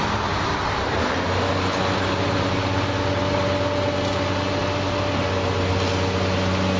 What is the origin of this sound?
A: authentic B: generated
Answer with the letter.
A